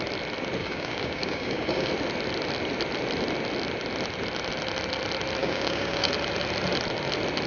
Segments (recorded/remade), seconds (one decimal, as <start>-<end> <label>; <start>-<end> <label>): 0.0-0.6 recorded; 0.6-1.9 remade; 1.9-5.4 recorded; 5.4-6.1 remade; 6.1-7.5 recorded